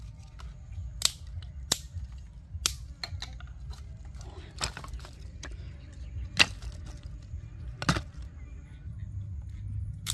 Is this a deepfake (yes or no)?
no